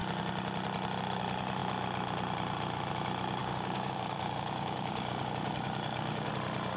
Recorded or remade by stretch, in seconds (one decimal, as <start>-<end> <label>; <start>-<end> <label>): 0.0-3.4 recorded; 3.4-6.3 remade; 6.3-6.8 recorded